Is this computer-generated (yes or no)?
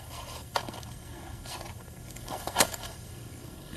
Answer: yes